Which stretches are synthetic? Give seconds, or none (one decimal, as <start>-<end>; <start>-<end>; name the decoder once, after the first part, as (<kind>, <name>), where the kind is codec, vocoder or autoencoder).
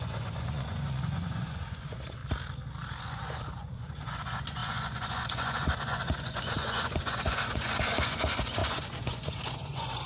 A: 0.0-2.2 (vocoder, Vocos); 3.0-10.1